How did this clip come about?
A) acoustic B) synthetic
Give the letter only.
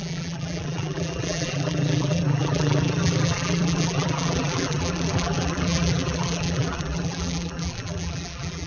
B